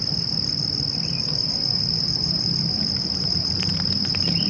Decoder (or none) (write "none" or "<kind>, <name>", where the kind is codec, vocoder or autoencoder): vocoder, BigVGAN v2